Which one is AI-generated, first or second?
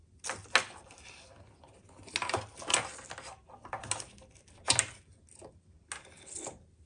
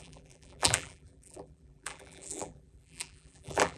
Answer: second